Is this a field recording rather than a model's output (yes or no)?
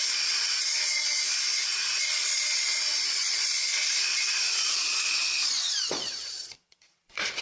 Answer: no